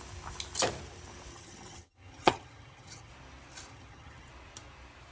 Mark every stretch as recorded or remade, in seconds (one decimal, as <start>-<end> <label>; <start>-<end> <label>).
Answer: 0.0-1.3 recorded; 1.3-3.1 remade; 3.1-3.7 recorded; 3.7-4.3 remade; 4.3-5.1 recorded

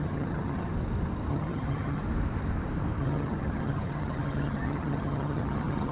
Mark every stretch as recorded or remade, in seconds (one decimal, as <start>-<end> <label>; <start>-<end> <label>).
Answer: 0.0-0.7 remade; 0.7-1.3 recorded; 1.3-2.0 remade; 2.0-3.0 recorded; 3.0-5.9 remade

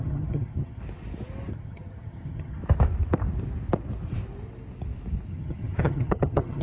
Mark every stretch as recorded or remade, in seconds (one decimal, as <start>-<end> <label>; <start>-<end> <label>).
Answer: 0.0-0.8 remade; 0.8-1.5 recorded; 1.5-2.6 remade; 2.6-5.3 recorded; 5.3-6.6 remade